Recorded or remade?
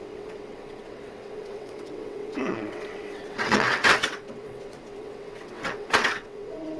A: remade